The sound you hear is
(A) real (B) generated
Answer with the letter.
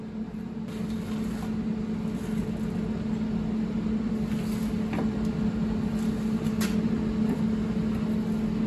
A